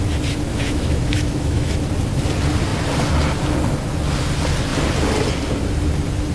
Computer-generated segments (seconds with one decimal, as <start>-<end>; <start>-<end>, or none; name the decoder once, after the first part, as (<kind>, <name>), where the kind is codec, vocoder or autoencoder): 0.5-1.7 (autoencoder, DAC-VAE)